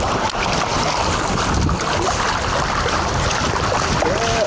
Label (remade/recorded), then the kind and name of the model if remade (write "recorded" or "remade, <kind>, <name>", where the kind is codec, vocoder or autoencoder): recorded